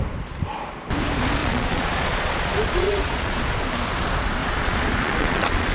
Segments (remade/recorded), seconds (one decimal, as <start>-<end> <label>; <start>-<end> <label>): 0.0-1.4 recorded; 1.4-3.4 remade; 3.4-4.4 recorded; 4.4-5.7 remade